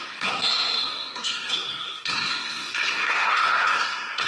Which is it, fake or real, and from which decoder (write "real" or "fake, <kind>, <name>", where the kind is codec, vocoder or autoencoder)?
fake, codec, SNAC